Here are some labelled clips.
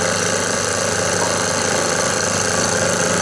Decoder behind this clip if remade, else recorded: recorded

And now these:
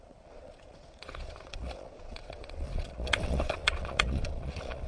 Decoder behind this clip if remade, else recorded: remade, vocoder, Vocos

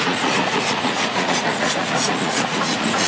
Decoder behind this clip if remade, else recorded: remade, vocoder, Vocos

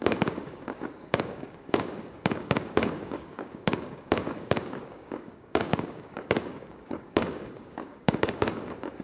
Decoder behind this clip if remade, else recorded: remade, codec, DAC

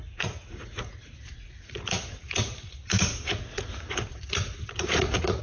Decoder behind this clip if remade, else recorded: remade, vocoder, Vocos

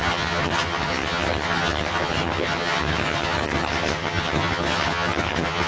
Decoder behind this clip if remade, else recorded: remade, vocoder, HiFi-GAN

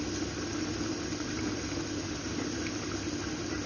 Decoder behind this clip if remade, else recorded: recorded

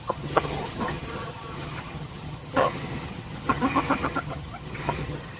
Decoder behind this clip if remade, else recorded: remade, vocoder, HiFi-GAN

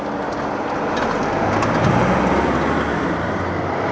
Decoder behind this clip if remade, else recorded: recorded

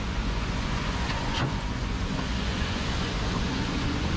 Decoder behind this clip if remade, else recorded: remade, vocoder, Vocos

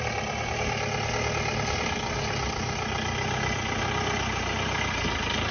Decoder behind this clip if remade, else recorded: recorded